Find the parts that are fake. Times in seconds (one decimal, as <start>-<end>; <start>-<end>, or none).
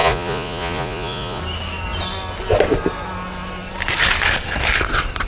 0.0-1.4